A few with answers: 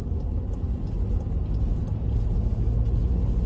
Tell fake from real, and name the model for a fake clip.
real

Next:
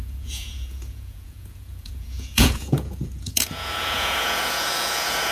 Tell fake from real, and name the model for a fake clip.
fake, vocoder, Vocos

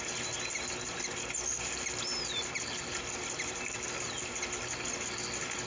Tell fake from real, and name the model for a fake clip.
real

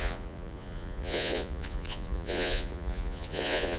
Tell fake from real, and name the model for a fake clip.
fake, vocoder, Vocos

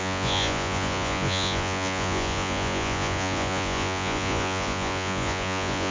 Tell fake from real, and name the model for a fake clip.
fake, vocoder, Vocos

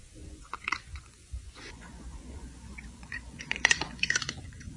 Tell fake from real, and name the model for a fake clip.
fake, vocoder, Vocos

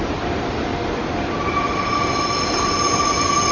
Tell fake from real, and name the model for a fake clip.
real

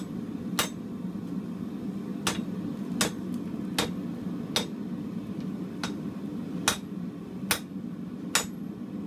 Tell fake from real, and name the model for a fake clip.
real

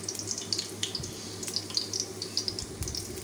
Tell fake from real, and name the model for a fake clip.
real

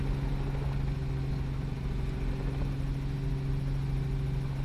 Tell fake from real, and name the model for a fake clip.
real